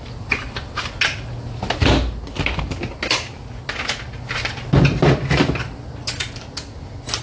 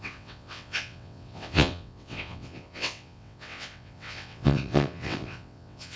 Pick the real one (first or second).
first